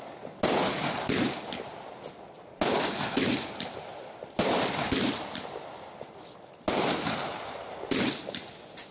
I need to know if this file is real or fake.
real